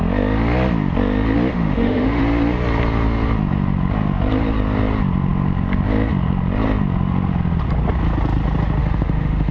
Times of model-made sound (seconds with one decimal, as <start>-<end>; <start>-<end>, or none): 1.5-2.2; 8.8-9.5